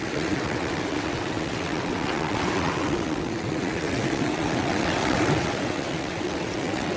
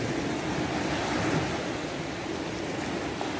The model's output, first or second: first